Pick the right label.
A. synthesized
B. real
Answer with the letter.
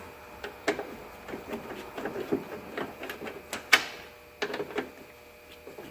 B